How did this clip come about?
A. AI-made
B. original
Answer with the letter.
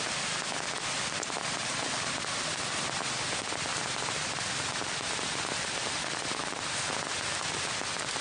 B